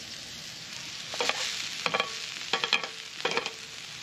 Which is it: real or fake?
real